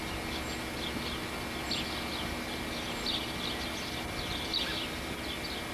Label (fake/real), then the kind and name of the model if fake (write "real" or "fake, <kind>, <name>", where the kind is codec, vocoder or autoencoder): real